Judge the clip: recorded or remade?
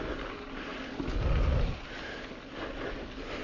recorded